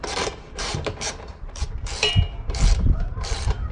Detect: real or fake fake